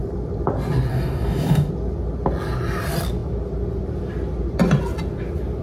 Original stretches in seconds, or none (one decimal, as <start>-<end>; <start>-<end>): 0.0-0.9; 1.7-5.6